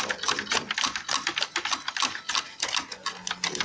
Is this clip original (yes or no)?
yes